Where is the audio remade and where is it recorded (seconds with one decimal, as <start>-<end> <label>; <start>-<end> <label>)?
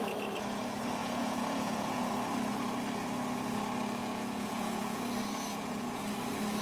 0.0-1.0 recorded; 1.0-2.1 remade; 2.1-4.0 recorded; 4.0-5.0 remade; 5.0-5.5 recorded; 5.5-6.0 remade; 6.0-6.6 recorded